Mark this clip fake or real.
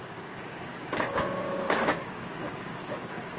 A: fake